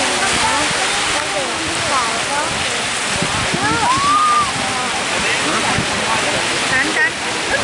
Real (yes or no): yes